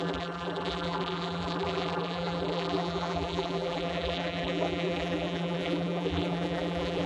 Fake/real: fake